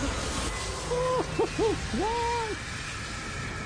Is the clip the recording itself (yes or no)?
yes